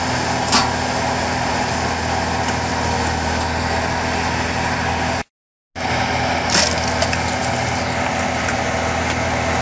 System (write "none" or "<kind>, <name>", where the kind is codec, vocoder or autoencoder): none